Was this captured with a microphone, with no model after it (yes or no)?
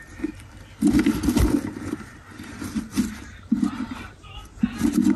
yes